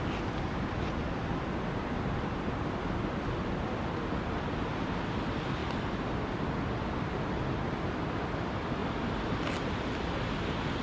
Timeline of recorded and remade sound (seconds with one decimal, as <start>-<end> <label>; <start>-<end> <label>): 0.0-8.8 recorded; 8.8-9.4 remade; 9.4-10.8 recorded